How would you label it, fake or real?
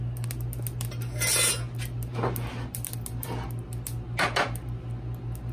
real